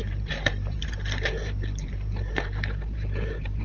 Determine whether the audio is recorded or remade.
remade